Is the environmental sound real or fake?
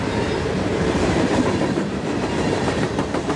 fake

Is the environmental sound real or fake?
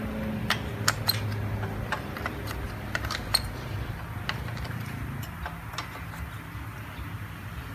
real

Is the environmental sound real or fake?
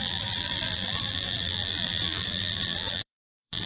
fake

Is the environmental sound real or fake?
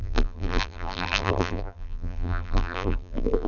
fake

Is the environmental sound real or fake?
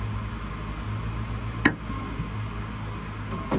real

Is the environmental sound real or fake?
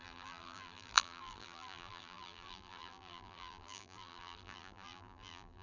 fake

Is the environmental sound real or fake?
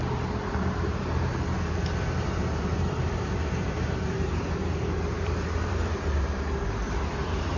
fake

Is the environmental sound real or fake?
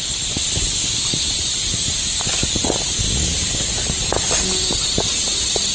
real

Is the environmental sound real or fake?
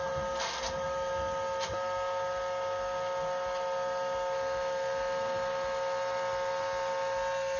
real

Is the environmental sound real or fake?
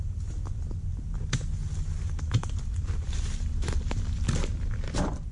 fake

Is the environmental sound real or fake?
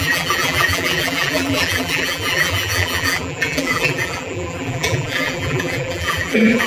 fake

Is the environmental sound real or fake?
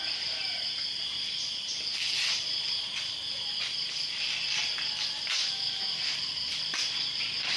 real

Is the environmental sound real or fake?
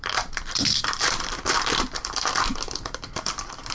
fake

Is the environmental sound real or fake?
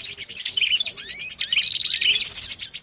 real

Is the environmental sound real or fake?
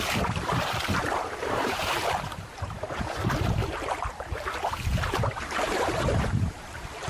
fake